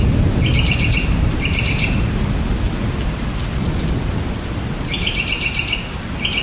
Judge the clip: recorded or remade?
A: recorded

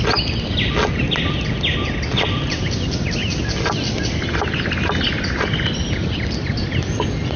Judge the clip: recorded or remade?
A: recorded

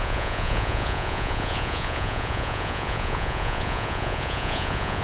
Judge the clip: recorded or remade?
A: remade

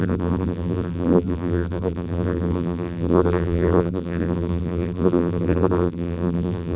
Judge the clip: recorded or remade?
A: remade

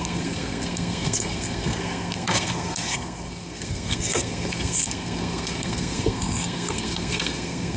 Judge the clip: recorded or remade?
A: remade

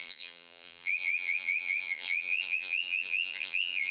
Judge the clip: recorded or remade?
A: remade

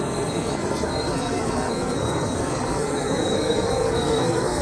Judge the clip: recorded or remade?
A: remade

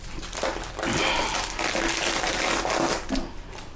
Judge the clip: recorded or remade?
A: recorded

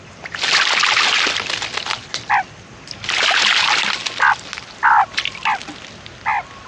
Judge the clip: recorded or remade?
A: recorded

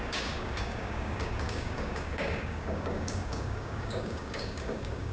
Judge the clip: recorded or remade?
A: remade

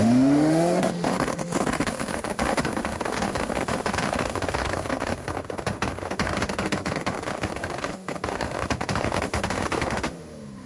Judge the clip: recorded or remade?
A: remade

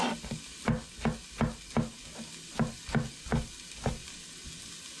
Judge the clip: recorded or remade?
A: recorded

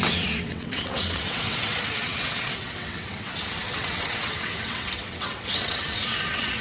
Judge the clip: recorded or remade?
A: remade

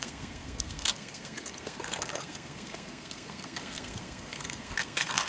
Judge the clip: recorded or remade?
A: remade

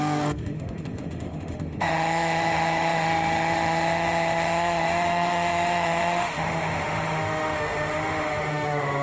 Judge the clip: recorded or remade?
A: remade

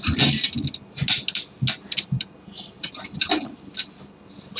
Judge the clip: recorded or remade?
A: recorded